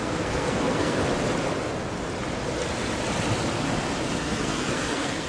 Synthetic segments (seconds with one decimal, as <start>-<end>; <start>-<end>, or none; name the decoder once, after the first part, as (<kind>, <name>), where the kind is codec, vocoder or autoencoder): 0.0-1.0 (codec, SNAC); 4.2-5.3